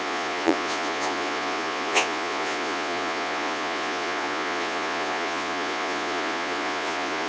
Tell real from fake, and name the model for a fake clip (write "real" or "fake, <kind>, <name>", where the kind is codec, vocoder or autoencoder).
fake, vocoder, Vocos